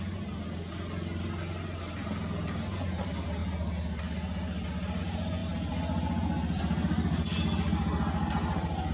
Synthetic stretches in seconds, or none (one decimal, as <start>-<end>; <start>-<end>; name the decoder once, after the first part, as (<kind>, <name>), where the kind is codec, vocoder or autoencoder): none

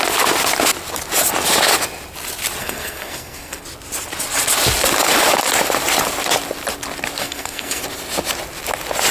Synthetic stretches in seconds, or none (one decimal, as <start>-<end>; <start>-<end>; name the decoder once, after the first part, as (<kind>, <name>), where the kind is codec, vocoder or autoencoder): 2.6-3.6 (codec, SNAC); 7.2-7.8

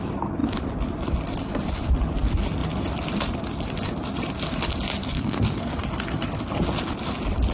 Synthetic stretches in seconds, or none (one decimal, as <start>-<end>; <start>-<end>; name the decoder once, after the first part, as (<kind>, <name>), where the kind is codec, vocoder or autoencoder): 5.1-5.7 (codec, SNAC)

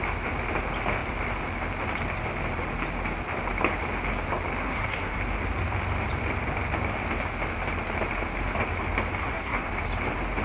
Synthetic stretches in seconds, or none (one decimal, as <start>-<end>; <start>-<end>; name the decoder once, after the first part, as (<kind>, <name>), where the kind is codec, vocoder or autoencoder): 4.6-5.2 (codec, SNAC); 9.2-9.7

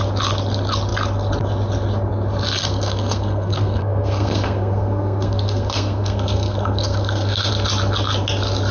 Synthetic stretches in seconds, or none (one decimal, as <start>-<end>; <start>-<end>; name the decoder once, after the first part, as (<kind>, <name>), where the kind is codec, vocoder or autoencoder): 2.6-7.5 (codec, SNAC)

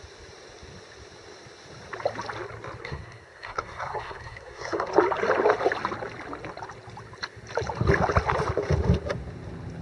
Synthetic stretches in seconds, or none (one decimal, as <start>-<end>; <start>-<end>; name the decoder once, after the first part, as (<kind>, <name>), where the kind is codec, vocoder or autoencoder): 2.8-4.9 (codec, SNAC)

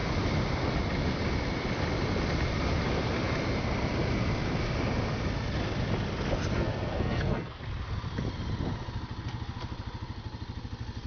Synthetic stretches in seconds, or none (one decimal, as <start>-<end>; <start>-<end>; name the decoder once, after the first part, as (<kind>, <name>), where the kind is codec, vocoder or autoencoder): 6.5-7.6 (codec, SNAC)